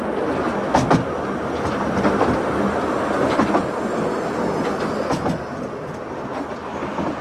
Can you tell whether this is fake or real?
real